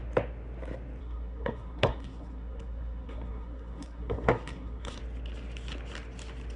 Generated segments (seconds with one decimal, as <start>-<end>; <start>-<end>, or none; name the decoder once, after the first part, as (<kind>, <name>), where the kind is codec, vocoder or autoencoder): 1.0-5.0 (codec, SNAC)